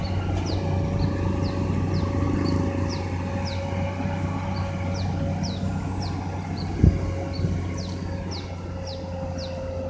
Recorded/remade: recorded